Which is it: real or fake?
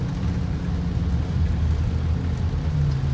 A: real